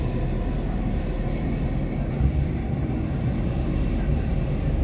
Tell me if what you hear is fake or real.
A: real